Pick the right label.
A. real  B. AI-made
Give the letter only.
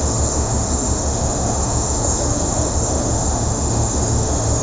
B